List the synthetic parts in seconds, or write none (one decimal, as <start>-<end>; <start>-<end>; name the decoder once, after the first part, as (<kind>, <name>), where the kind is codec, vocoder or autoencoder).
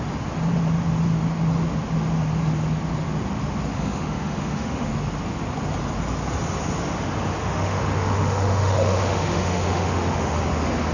3.7-4.9 (autoencoder, DAC-VAE); 7.4-10.4